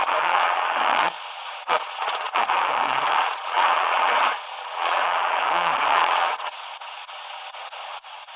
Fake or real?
fake